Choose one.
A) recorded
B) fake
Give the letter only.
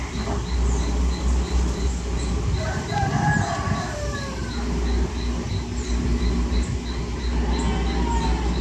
A